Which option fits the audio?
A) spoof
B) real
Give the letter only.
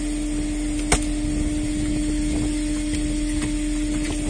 B